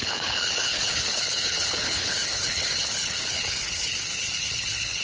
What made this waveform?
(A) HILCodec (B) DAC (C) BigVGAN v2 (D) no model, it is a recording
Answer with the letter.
A